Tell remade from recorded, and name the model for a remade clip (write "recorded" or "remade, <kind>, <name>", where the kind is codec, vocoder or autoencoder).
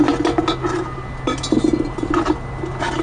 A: recorded